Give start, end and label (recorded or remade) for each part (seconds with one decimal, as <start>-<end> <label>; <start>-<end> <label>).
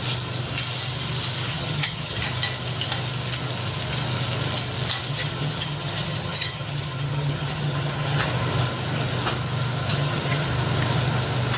0.0-1.5 recorded; 1.5-2.2 remade; 2.2-5.1 recorded; 5.1-8.3 remade; 8.3-9.9 recorded; 9.9-10.5 remade; 10.5-11.6 recorded